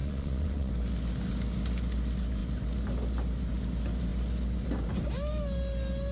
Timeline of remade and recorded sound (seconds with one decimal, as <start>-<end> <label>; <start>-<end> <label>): 0.0-0.7 remade; 0.7-6.1 recorded